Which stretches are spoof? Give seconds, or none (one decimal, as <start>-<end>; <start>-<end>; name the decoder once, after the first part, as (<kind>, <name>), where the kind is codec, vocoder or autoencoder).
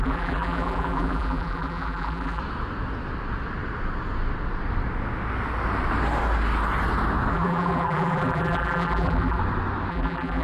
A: 0.0-2.4 (vocoder, BigVGAN v2); 7.3-9.4; 9.9-10.4